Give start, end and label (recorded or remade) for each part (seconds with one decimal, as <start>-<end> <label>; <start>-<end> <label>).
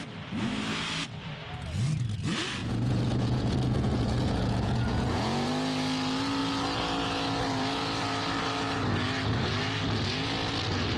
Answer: 0.0-2.6 recorded; 2.6-5.5 remade; 5.5-11.0 recorded